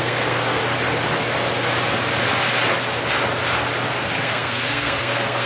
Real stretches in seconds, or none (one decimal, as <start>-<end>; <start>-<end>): 0.6-3.9